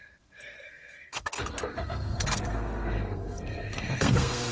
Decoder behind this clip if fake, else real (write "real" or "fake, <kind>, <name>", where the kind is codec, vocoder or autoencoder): fake, codec, SNAC